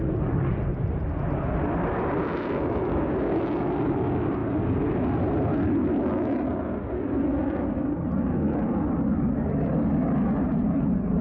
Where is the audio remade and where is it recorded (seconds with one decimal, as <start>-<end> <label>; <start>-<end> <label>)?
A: 0.0-2.9 recorded; 2.9-3.4 remade; 3.4-11.2 recorded